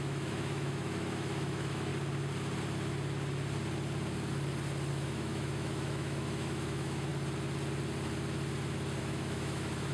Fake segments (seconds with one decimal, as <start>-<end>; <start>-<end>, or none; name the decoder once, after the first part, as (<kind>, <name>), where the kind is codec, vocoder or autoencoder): 0.0-1.9 (autoencoder, DAC-VAE); 4.9-7.1; 9.0-9.9